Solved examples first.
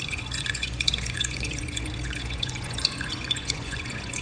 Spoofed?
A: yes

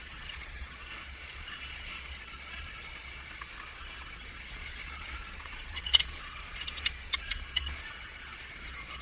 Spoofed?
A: yes